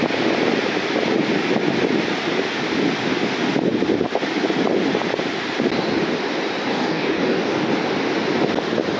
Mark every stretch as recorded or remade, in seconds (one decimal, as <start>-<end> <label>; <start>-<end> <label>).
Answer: 0.0-6.7 recorded; 6.7-7.7 remade; 7.7-9.0 recorded